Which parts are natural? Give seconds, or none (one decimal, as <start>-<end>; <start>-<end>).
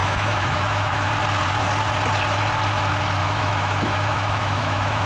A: 1.1-3.2